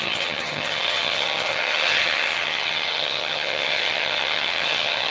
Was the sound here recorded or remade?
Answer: remade